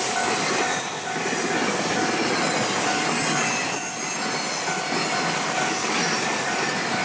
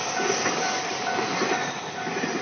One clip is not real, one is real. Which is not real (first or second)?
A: second